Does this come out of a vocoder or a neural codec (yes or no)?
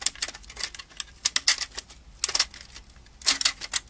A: no